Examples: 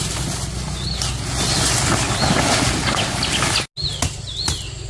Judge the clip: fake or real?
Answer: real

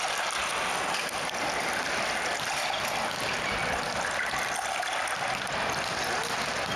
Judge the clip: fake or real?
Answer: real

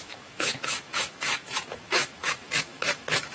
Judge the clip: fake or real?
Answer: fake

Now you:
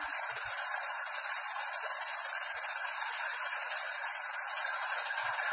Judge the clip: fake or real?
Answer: real